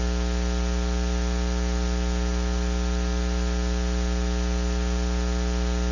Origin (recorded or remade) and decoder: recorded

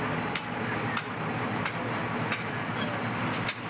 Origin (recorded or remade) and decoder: recorded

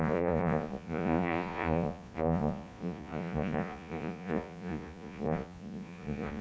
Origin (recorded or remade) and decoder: remade, vocoder, Vocos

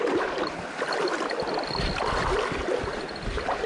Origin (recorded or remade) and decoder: recorded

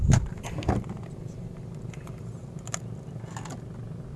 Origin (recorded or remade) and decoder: recorded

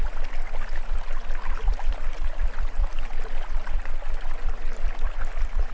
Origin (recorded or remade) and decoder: recorded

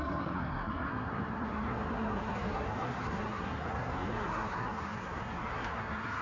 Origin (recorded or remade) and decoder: remade, codec, SNAC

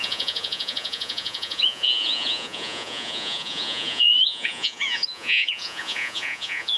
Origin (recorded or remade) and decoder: remade, vocoder, Vocos